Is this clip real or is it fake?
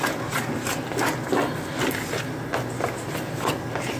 real